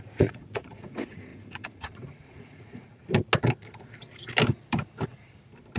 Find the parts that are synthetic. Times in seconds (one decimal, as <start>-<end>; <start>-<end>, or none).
0.0-2.9